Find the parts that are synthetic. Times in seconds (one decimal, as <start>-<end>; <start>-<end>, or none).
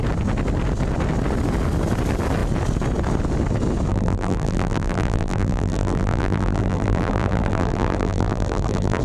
3.9-9.0